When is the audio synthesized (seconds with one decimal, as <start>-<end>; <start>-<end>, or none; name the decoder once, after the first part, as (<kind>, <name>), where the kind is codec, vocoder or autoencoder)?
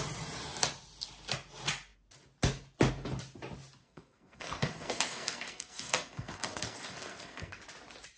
3.8-7.6 (codec, SNAC)